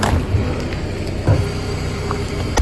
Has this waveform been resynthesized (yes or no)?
no